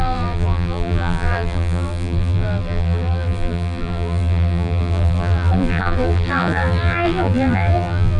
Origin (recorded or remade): remade